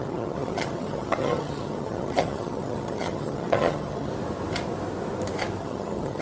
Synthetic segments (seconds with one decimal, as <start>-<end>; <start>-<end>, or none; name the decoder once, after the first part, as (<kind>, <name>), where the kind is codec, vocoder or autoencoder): 0.0-4.1 (vocoder, HiFi-GAN); 5.6-6.2